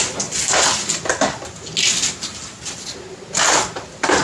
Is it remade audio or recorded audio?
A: recorded